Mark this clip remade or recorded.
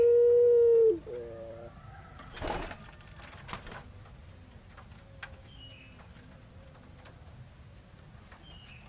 recorded